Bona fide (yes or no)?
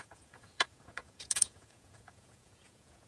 no